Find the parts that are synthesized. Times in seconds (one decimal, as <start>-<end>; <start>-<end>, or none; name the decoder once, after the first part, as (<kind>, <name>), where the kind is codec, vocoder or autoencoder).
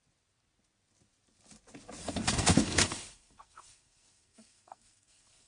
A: 2.0-5.5 (codec, SNAC)